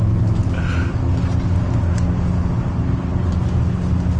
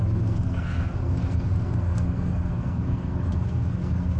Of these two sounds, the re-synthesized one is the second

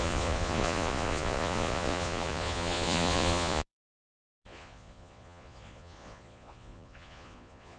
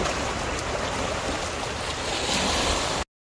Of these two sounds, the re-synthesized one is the first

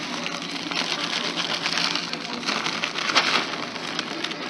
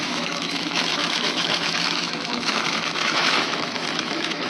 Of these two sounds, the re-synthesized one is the second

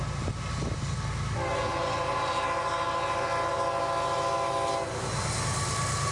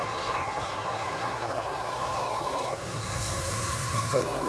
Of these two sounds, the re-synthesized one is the second